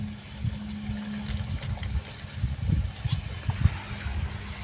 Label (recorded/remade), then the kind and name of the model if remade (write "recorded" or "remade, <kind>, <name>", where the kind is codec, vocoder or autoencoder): recorded